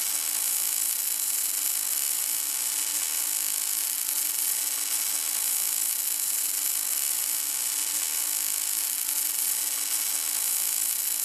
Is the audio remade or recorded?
recorded